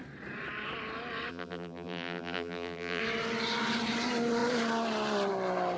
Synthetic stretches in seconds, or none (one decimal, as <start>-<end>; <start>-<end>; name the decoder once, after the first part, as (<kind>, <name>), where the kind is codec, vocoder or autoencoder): 1.3-3.0 (vocoder, BigVGAN v2)